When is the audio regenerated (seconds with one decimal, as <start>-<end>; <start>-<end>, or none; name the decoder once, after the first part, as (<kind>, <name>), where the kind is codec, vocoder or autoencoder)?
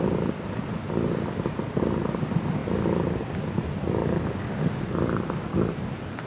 none